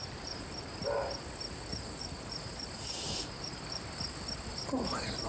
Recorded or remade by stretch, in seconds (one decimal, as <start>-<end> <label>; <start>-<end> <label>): 0.0-0.5 remade; 0.5-1.7 recorded; 1.7-3.8 remade; 3.8-4.5 recorded; 4.5-5.3 remade